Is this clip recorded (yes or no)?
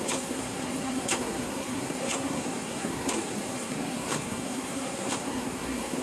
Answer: no